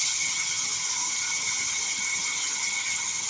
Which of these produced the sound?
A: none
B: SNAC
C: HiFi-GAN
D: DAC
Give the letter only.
C